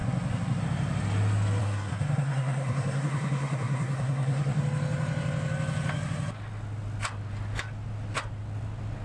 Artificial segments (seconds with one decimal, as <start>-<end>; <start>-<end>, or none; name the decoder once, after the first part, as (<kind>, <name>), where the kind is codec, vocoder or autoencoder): 0.0-0.6 (codec, SNAC); 1.6-4.6